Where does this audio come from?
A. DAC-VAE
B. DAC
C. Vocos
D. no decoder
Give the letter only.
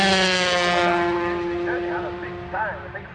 D